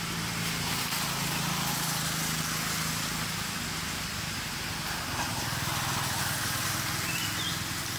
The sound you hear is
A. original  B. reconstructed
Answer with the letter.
A